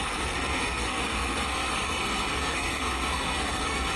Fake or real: fake